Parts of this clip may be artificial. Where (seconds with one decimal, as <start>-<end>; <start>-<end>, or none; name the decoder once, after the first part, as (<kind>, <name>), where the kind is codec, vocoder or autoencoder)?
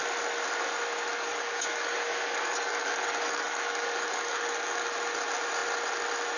1.1-4.9 (codec, DAC)